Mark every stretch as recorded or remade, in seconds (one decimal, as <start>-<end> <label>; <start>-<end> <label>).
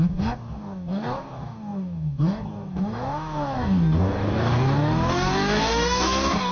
0.0-6.5 remade